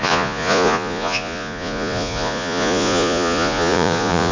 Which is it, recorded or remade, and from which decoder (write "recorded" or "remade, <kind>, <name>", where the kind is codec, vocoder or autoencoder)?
remade, vocoder, Vocos